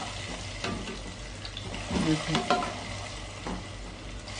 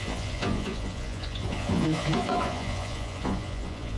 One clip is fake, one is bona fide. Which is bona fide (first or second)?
first